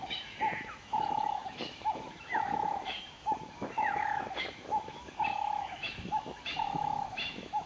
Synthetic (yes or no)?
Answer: yes